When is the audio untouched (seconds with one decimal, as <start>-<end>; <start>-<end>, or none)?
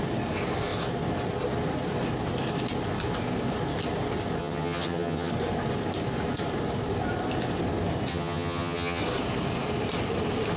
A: 0.0-4.4; 5.3-8.1; 9.0-10.6